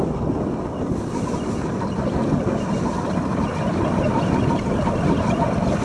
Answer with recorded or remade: recorded